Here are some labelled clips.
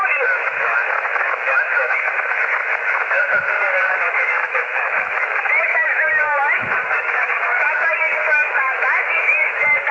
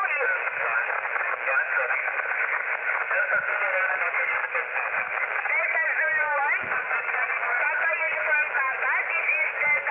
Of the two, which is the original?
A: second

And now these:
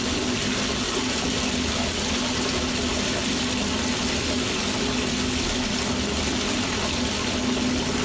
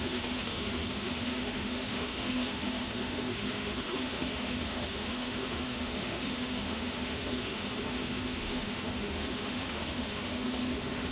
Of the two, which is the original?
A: first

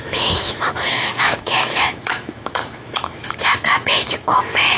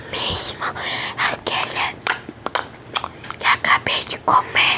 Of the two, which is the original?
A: second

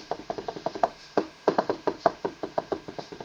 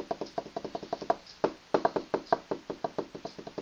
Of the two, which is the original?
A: second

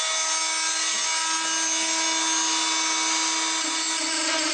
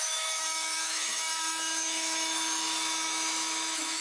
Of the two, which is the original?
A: first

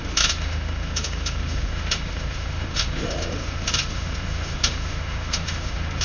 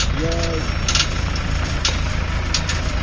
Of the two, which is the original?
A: second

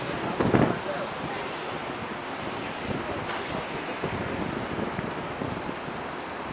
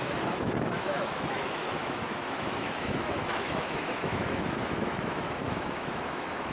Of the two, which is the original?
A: first